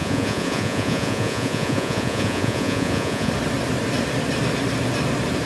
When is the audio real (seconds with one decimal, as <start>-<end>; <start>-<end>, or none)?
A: 3.3-5.5